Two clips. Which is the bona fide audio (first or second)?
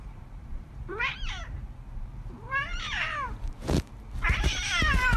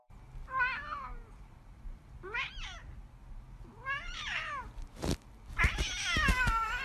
second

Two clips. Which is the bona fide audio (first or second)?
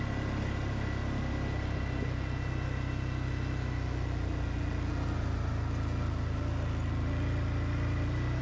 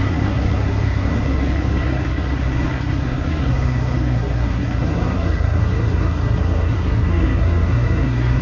first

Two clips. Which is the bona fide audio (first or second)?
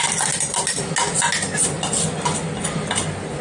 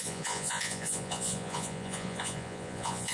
first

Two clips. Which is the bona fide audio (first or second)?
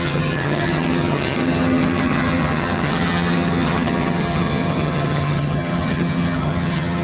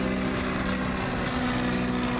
second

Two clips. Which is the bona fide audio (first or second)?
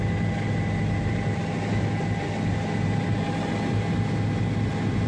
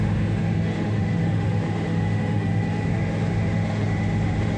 first